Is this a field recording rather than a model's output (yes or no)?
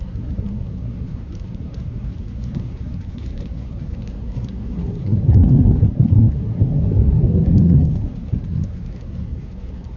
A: no